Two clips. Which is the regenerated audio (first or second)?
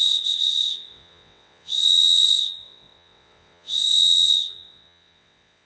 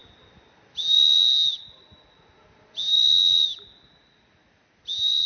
first